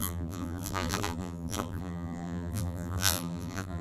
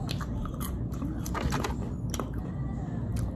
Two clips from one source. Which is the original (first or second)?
second